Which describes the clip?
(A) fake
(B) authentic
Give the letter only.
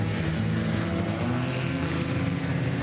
A